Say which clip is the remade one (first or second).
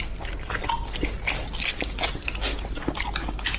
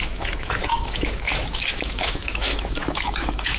second